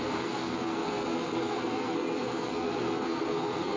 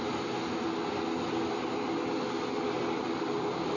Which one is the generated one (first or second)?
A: first